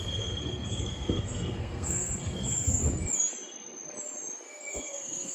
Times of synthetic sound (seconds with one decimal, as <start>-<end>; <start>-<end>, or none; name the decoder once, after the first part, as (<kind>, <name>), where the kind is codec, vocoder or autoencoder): 0.0-2.8 (codec, SNAC); 4.7-5.3